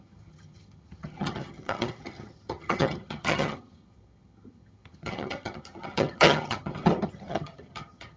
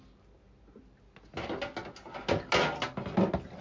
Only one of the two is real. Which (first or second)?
second